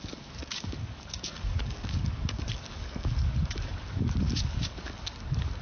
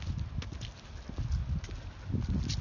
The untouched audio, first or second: second